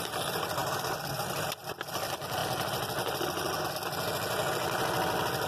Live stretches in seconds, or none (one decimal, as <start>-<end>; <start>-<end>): 0.0-0.6; 1.6-5.5